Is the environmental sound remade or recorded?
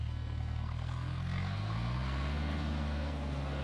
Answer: remade